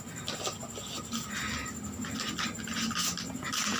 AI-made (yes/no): no